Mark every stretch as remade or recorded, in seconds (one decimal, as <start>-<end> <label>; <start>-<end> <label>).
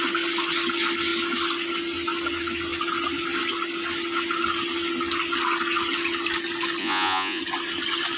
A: 0.0-6.8 recorded; 6.8-7.4 remade; 7.4-8.2 recorded